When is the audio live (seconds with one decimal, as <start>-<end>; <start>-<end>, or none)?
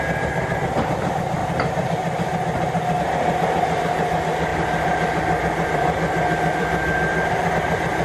0.0-4.5; 7.5-8.0